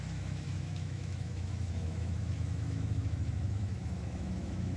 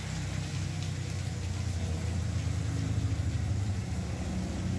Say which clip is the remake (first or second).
first